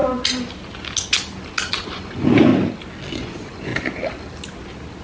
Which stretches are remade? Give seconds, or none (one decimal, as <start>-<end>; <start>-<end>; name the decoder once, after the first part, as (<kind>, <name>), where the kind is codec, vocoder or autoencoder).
1.7-2.5 (vocoder, Vocos); 3.1-3.7